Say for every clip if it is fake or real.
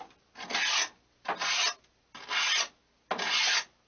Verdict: real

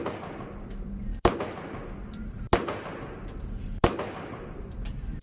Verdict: fake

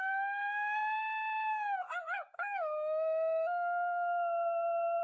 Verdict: fake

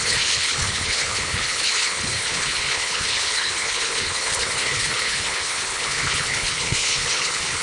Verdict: fake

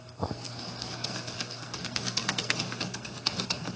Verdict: fake